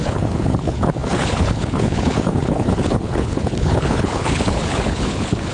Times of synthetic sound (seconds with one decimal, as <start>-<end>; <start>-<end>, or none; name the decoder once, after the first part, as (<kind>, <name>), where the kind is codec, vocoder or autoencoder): 0.0-5.5 (codec, HILCodec)